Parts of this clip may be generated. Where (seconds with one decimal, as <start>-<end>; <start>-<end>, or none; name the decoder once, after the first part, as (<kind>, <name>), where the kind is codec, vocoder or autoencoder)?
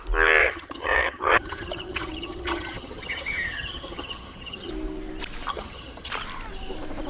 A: 0.4-4.7 (vocoder, HiFi-GAN); 5.5-6.1